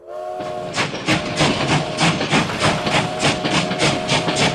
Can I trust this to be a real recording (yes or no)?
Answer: yes